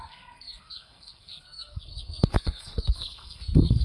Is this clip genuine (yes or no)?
no